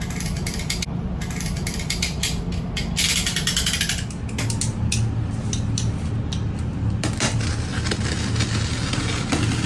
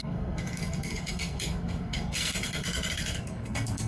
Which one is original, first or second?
first